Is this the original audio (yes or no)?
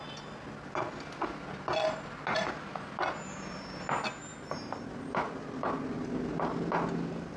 yes